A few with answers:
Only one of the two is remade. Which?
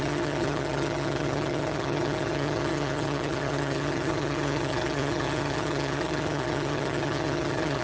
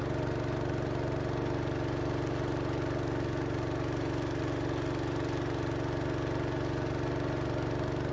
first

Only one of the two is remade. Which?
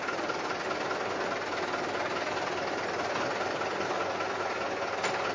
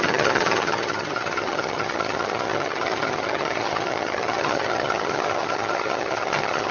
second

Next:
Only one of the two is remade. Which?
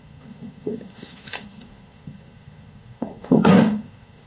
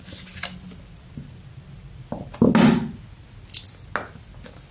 first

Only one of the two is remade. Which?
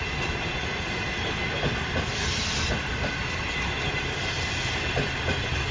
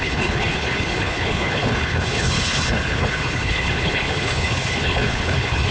second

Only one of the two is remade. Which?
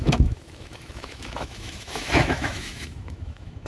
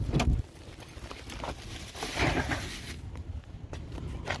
first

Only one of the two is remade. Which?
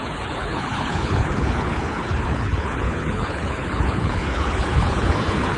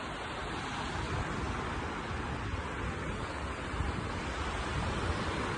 first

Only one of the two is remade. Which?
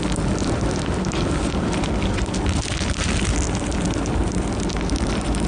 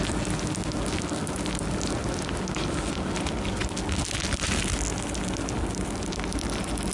first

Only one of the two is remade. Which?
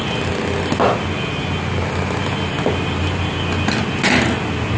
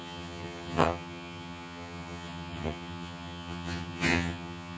second